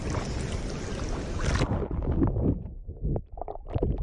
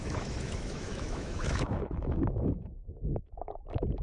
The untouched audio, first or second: first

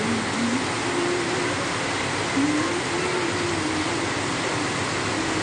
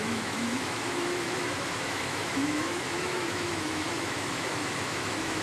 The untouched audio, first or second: first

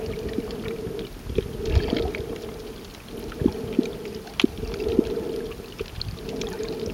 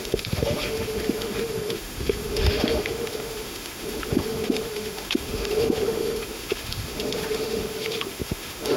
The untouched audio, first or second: first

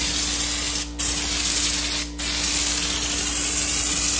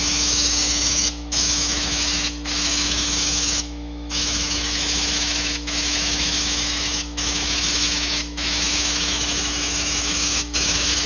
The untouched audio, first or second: first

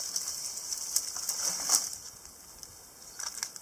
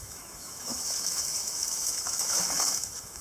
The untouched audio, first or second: first